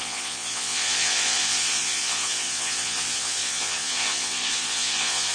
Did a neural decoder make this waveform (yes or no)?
yes